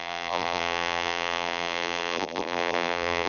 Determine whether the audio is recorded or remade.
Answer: remade